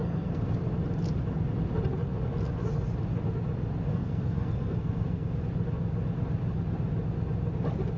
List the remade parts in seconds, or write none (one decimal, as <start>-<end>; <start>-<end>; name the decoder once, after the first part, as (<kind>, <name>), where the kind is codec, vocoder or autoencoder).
0.0-0.7 (codec, SNAC); 3.9-5.4